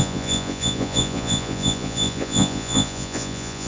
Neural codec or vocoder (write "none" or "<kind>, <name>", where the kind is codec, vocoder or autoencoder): vocoder, Vocos